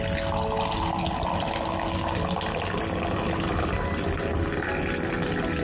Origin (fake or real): real